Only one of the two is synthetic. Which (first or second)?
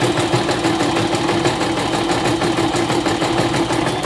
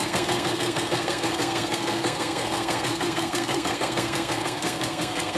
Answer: second